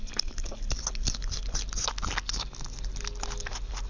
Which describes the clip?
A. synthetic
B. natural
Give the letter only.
B